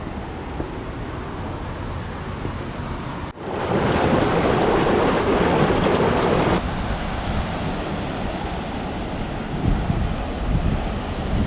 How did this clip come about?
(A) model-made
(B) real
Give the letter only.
B